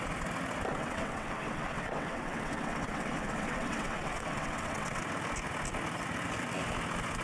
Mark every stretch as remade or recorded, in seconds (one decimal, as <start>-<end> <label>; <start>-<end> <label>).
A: 0.0-0.7 recorded; 0.7-5.0 remade; 5.0-7.2 recorded